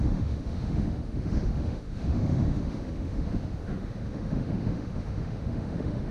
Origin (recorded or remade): remade